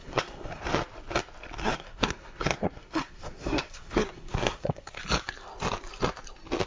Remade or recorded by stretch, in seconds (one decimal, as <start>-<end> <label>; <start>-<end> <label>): 0.0-0.6 remade; 0.6-1.6 recorded; 1.6-5.0 remade; 5.0-6.7 recorded